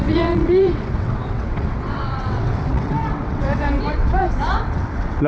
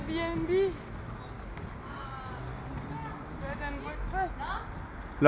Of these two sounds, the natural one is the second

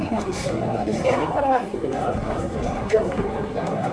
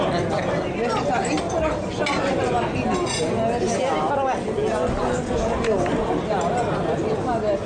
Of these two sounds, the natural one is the second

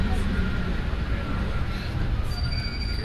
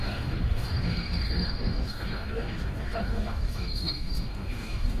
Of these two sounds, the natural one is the first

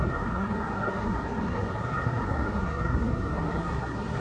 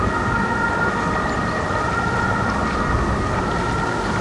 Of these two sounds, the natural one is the second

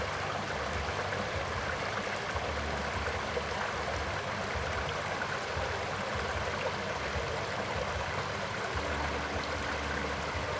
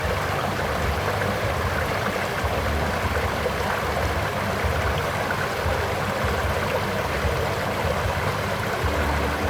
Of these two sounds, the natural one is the first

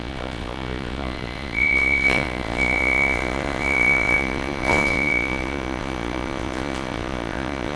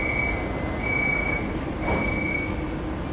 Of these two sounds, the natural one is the second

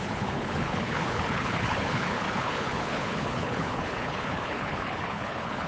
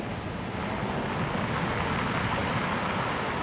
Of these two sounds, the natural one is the second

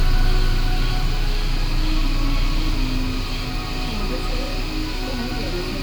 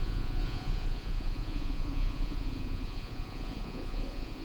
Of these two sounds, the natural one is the first